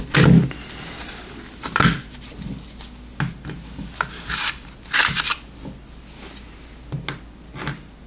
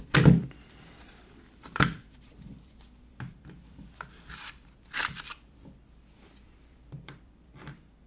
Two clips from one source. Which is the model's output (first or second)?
second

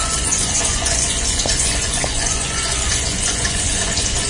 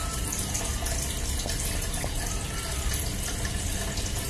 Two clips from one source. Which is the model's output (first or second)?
first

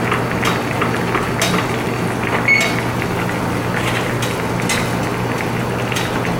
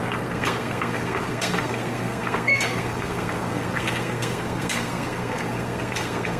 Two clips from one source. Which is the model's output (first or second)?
second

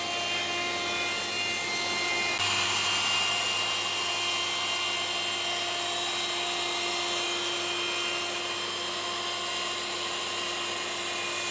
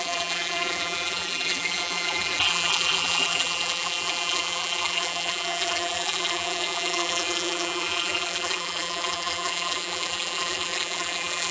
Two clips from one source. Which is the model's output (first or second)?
second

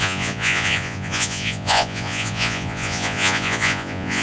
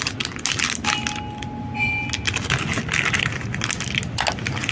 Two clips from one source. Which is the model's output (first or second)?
first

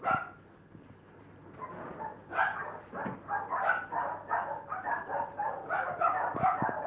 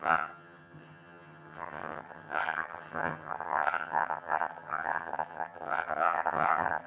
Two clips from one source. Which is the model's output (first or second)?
second